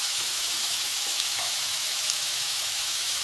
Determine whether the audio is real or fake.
fake